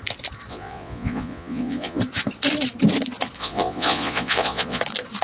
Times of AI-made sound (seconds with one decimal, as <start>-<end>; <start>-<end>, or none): 0.5-2.0; 3.4-4.8